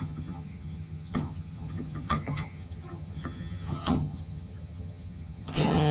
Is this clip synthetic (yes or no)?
yes